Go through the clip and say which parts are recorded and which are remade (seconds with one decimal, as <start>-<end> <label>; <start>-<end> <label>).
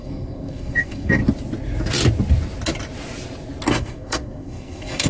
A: 0.0-1.2 remade; 1.2-3.7 recorded; 3.7-5.1 remade